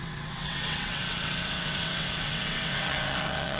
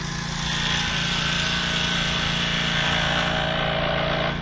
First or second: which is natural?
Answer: second